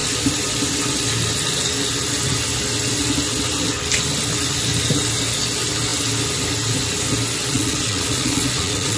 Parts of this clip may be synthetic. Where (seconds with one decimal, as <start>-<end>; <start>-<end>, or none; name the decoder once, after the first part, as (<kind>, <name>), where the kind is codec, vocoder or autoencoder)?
7.4-9.0 (vocoder, Vocos)